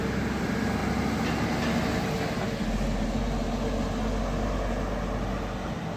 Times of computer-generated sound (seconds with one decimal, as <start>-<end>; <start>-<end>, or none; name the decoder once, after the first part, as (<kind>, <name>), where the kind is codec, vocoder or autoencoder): none